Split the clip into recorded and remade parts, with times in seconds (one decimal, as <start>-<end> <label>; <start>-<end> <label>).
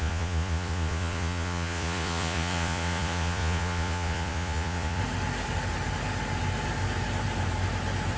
0.0-5.0 remade; 5.0-8.2 recorded